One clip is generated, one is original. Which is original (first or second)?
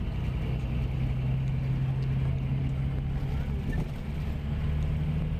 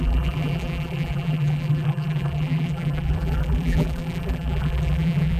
first